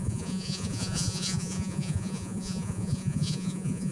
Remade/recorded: remade